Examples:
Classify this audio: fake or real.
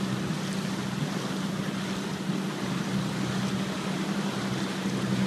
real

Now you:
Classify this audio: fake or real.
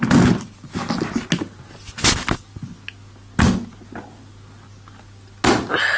real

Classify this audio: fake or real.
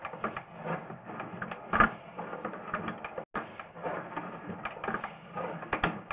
real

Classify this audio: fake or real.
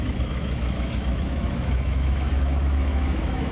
fake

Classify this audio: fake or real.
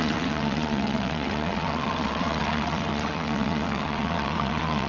fake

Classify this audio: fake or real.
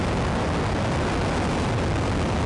real